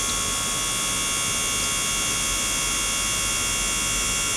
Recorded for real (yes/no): yes